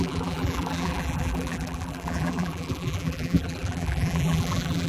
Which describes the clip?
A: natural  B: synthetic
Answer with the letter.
B